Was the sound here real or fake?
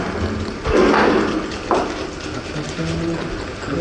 real